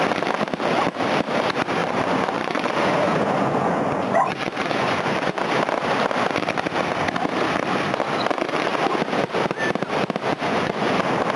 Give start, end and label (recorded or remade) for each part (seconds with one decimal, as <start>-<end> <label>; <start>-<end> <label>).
0.0-1.8 recorded; 1.8-5.4 remade; 5.4-10.3 recorded; 10.3-11.0 remade; 11.0-11.4 recorded